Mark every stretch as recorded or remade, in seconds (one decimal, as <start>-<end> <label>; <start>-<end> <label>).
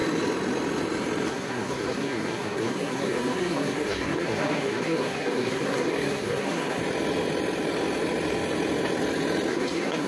0.0-1.3 recorded; 1.3-6.8 remade; 6.8-9.5 recorded; 9.5-10.1 remade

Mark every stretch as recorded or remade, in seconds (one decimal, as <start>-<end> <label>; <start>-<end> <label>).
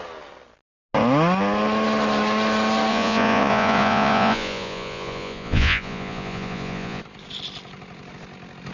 0.0-2.9 recorded; 2.9-7.0 remade; 7.0-8.7 recorded